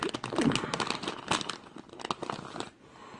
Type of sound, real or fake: real